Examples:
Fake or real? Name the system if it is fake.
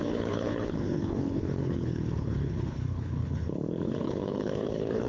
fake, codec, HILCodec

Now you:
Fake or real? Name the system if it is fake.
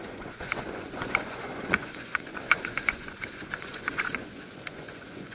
fake, vocoder, Vocos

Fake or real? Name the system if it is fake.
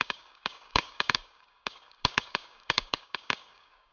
fake, codec, DAC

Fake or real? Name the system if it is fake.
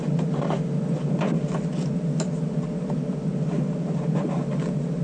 real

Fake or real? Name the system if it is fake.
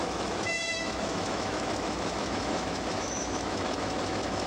fake, autoencoder, DAC-VAE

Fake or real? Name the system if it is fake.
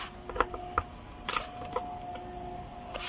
real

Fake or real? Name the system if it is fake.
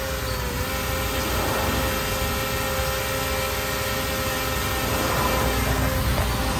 real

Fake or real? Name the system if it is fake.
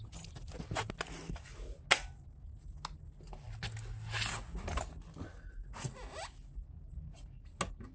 real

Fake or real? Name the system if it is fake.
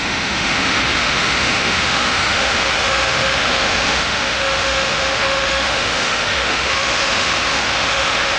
fake, autoencoder, DAC-VAE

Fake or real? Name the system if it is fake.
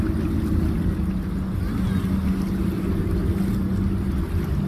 real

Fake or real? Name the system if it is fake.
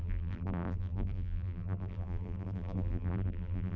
fake, vocoder, BigVGAN v2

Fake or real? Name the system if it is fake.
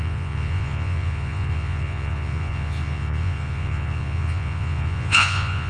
fake, vocoder, Vocos